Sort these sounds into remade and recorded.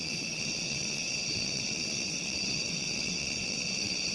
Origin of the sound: remade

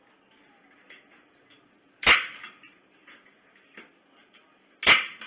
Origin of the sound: recorded